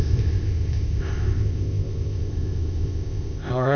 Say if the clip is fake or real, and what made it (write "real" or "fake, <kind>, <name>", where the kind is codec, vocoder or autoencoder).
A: fake, codec, ZipCodec